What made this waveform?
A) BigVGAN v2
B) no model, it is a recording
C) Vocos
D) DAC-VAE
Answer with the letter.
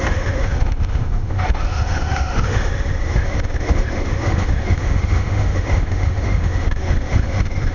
D